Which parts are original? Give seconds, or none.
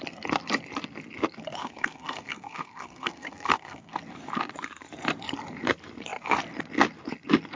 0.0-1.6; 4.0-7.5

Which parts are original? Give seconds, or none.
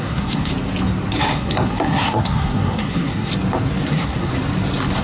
0.5-1.2; 3.3-3.9; 4.3-5.0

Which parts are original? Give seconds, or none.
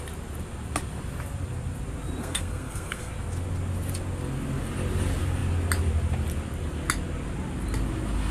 0.0-2.2; 3.1-8.3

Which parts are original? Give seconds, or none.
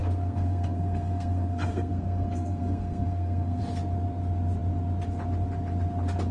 3.6-6.3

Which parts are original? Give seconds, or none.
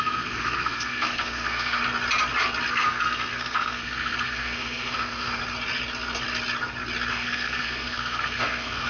1.8-2.7; 5.4-7.1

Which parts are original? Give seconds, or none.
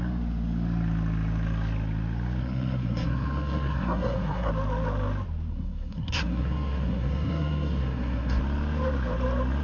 0.0-2.4; 4.5-5.5; 8.4-9.6